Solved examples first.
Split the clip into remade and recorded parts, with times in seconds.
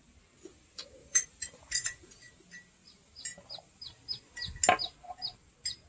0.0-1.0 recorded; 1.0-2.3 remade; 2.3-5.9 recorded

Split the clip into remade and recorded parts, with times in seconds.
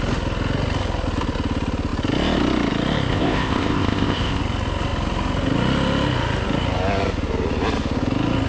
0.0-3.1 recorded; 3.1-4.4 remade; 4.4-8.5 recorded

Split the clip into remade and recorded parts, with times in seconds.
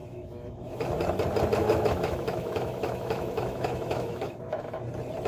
0.0-1.0 remade; 1.0-1.6 recorded; 1.6-4.8 remade; 4.8-5.3 recorded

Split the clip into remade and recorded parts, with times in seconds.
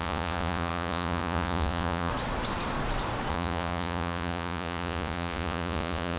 0.0-2.1 remade; 2.1-3.3 recorded; 3.3-6.2 remade